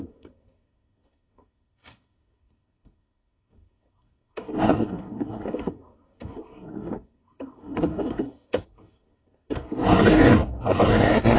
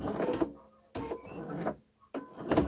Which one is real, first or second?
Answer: second